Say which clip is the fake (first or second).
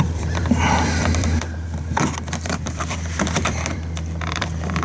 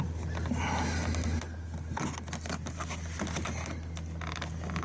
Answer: first